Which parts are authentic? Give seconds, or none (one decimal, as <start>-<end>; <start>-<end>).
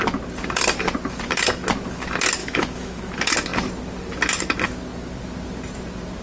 0.0-2.4; 3.0-6.2